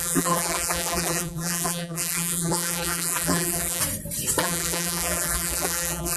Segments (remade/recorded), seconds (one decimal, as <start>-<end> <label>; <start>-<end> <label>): 0.0-3.8 remade; 3.8-4.4 recorded; 4.4-6.2 remade